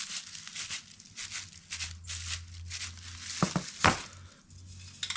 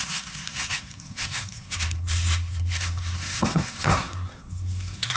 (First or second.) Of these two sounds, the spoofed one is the second